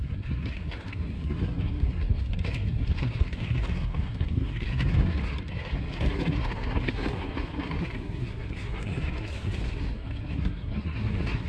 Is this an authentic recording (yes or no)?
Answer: no